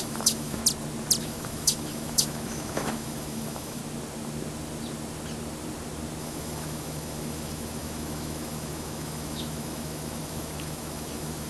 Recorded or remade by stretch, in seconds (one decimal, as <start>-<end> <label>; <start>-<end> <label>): 0.0-0.6 remade; 0.6-1.2 recorded; 1.2-3.8 remade; 3.8-6.2 recorded; 6.2-11.5 remade